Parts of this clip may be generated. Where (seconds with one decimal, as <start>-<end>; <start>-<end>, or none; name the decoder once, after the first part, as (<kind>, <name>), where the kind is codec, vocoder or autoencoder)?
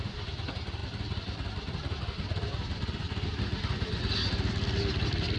0.8-3.4 (vocoder, BigVGAN v2)